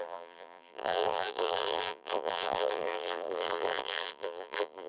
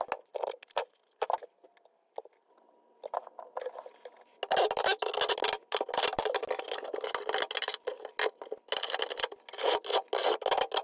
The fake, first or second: first